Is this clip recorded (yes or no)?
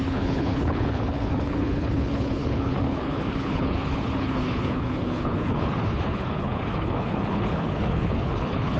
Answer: no